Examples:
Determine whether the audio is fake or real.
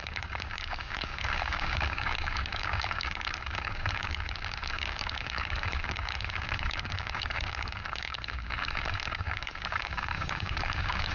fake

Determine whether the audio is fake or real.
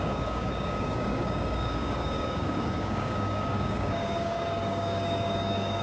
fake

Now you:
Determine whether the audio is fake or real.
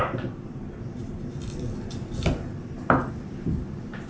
real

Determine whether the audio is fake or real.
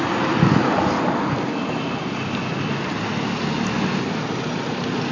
real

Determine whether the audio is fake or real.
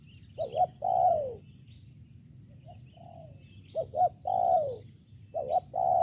real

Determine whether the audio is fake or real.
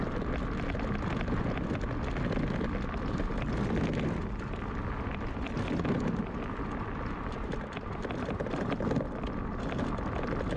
real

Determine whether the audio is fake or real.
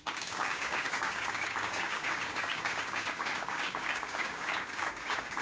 fake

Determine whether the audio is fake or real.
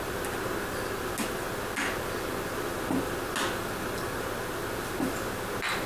real